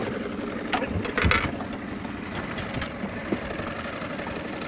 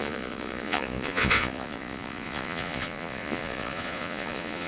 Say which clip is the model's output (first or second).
second